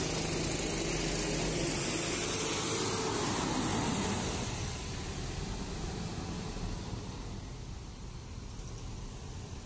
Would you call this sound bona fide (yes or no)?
yes